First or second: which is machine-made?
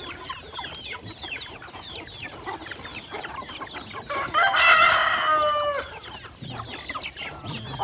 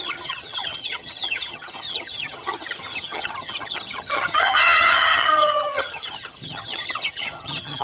second